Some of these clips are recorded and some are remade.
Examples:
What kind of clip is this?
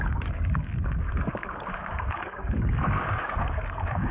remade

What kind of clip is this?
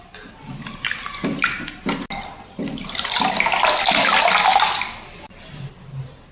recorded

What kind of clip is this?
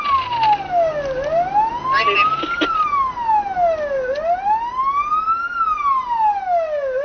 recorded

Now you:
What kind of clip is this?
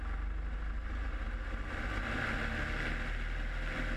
recorded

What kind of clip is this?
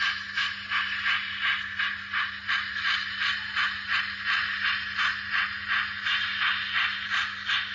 recorded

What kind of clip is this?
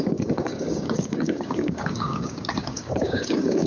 remade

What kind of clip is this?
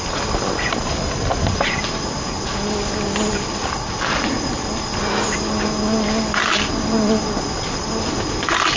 recorded